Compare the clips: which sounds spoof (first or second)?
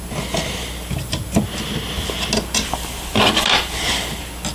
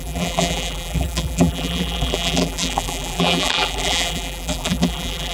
second